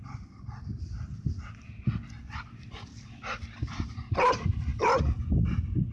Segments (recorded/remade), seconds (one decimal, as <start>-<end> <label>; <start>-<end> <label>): 0.0-5.9 recorded